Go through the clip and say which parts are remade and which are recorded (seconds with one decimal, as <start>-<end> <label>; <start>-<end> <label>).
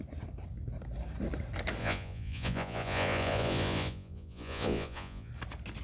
0.0-1.8 recorded; 1.8-5.3 remade; 5.3-5.8 recorded